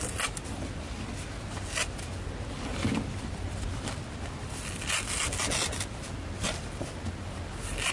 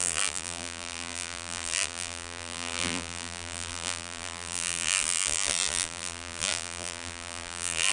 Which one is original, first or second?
first